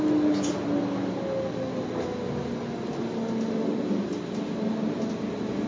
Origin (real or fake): real